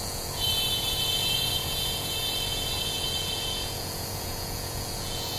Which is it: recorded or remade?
remade